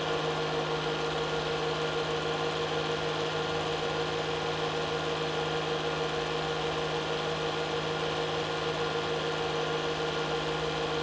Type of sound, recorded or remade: recorded